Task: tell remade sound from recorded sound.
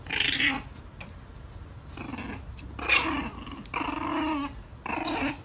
recorded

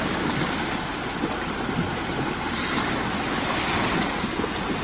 recorded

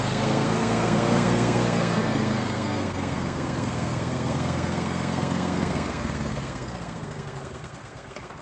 remade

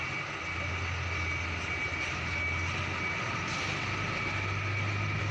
recorded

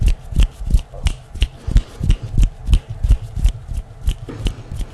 recorded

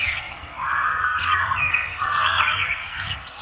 remade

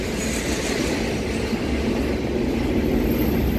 recorded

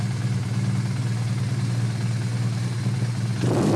recorded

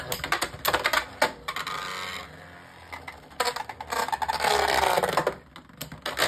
recorded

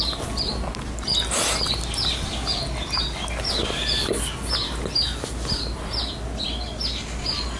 recorded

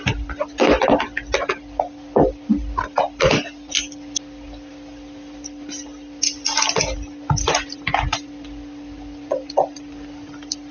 recorded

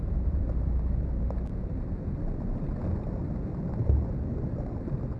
recorded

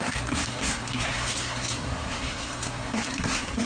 remade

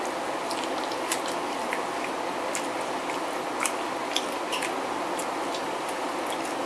recorded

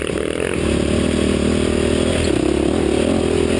recorded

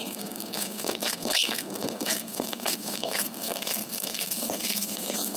remade